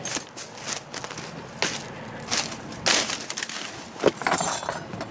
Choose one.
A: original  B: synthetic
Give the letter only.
A